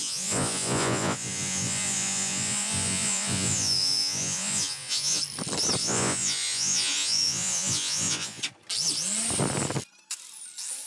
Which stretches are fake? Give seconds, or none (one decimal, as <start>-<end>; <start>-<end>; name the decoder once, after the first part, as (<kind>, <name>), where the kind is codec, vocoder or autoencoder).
0.0-5.2 (vocoder, Vocos); 5.8-8.4